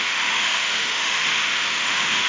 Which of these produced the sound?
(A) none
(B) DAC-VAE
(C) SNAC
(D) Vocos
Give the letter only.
B